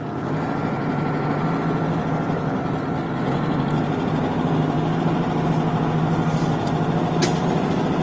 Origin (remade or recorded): recorded